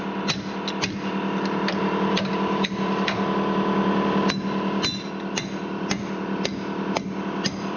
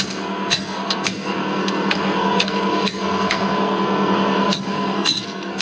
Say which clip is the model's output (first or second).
second